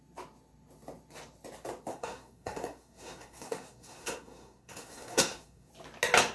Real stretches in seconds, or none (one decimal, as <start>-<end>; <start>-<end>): 0.0-1.9; 5.7-6.3